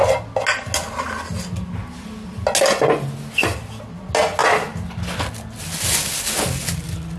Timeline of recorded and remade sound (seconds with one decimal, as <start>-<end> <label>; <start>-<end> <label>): 0.0-7.2 recorded